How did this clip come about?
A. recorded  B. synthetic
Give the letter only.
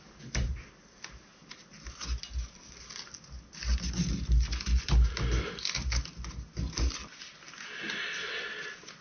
A